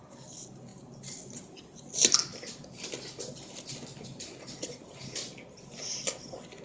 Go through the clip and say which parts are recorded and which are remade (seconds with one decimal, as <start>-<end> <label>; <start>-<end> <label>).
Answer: 0.0-6.6 recorded